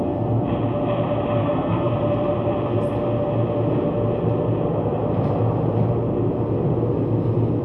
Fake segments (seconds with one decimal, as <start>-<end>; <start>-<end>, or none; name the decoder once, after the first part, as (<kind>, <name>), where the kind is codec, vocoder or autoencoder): 1.4-1.9 (codec, SNAC)